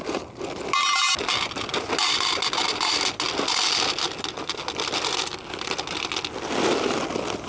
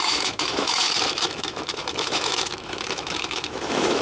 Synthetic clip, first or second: second